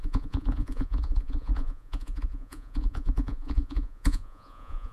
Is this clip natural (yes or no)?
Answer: no